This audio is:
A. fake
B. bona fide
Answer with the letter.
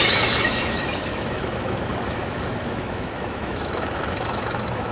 A